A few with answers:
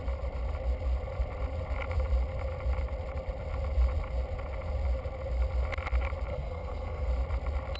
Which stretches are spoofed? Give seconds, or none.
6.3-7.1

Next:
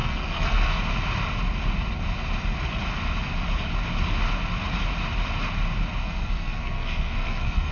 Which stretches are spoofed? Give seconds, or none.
0.0-0.8; 6.0-7.7